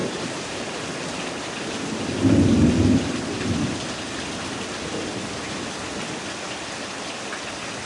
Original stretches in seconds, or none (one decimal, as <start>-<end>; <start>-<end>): 0.7-7.9